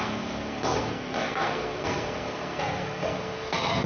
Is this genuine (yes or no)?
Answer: no